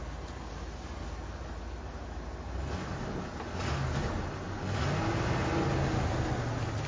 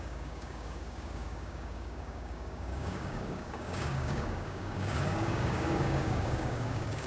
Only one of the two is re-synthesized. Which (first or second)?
second